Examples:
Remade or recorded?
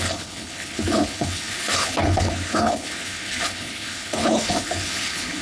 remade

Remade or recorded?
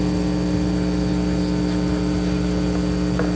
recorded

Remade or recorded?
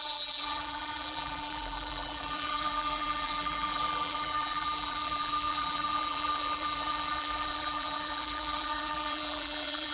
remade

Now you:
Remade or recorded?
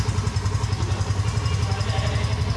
recorded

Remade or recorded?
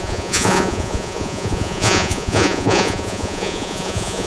remade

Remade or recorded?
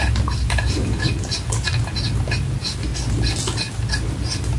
recorded